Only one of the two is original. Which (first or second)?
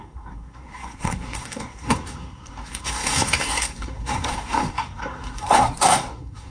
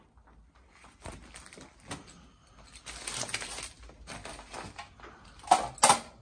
second